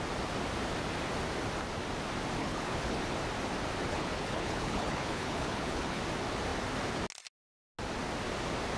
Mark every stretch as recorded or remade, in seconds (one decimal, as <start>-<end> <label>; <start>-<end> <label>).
0.0-2.4 recorded; 2.4-3.0 remade; 3.0-3.9 recorded; 3.9-6.0 remade; 6.0-8.8 recorded